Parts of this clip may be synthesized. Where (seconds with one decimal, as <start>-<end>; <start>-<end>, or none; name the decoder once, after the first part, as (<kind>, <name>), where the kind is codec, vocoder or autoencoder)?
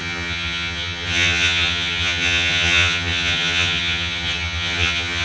0.0-5.2 (vocoder, HiFi-GAN)